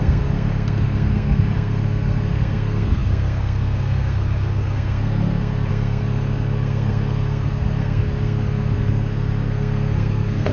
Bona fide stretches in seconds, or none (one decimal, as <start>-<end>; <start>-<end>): none